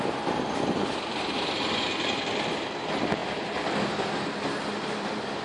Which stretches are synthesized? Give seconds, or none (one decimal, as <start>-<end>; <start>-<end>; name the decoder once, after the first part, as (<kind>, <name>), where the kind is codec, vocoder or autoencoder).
none